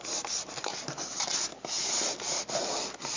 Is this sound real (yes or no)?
yes